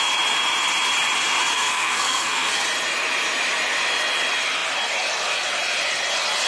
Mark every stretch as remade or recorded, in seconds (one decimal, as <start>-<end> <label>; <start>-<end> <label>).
0.0-1.5 recorded; 1.5-2.5 remade; 2.5-6.5 recorded